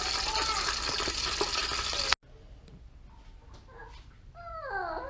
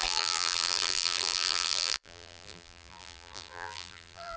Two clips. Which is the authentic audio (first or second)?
first